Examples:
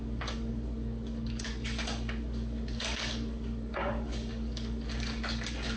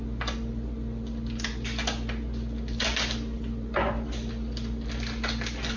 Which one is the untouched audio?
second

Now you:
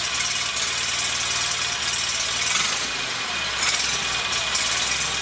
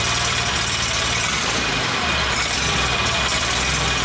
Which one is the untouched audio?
first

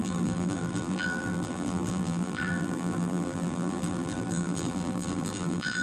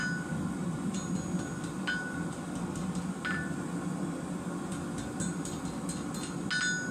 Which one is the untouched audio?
second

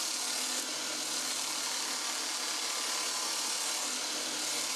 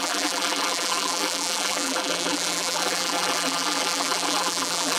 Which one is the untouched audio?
first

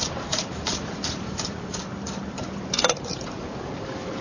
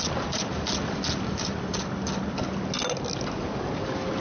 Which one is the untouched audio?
second